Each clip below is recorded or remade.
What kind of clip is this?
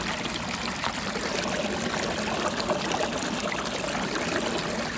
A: recorded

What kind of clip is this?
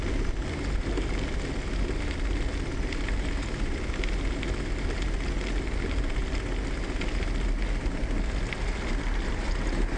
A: recorded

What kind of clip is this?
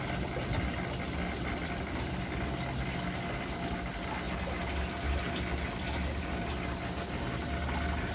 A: recorded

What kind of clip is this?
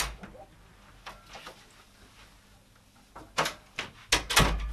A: recorded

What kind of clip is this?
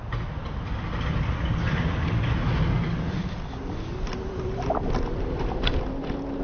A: recorded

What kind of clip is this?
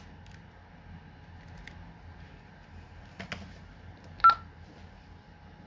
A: recorded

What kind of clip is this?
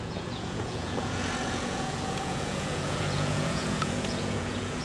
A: remade